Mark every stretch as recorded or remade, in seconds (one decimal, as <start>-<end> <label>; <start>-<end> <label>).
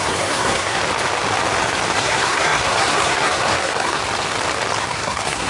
0.0-0.8 remade; 0.8-2.0 recorded; 2.0-4.0 remade; 4.0-4.8 recorded; 4.8-5.5 remade